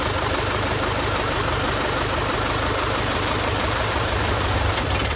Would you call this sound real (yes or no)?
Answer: no